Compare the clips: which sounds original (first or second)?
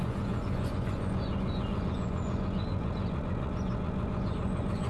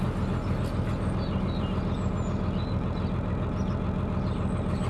second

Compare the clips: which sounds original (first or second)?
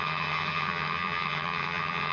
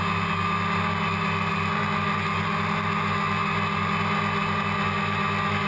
second